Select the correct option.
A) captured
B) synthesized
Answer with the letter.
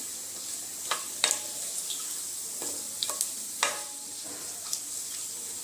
A